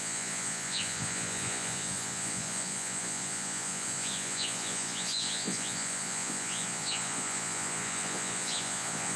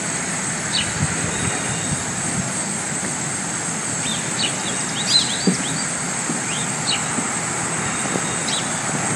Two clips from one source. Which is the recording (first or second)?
second